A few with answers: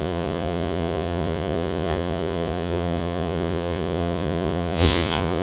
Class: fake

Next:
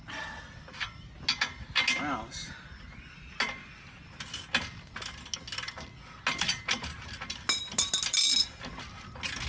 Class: real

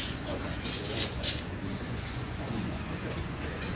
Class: fake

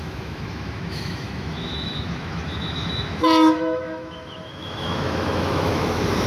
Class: fake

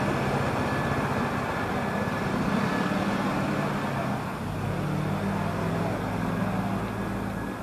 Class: real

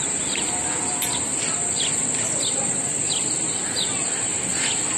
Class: real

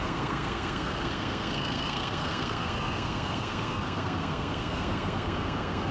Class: fake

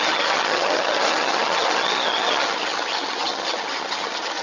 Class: fake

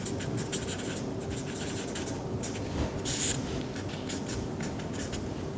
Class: real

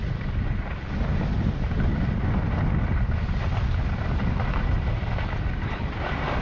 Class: real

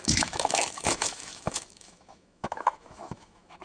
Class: fake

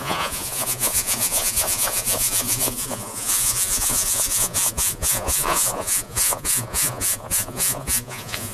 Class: fake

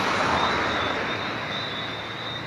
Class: real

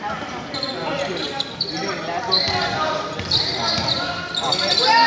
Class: real